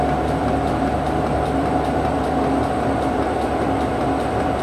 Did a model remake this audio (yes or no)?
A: yes